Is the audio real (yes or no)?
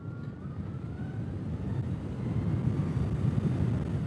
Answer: yes